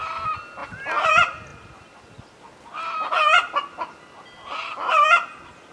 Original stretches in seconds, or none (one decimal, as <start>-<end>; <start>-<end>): 0.0-5.7